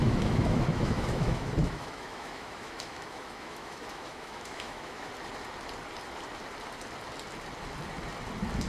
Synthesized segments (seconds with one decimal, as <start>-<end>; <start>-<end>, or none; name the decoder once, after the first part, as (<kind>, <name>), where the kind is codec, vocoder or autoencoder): 0.0-5.1 (autoencoder, DAC-VAE)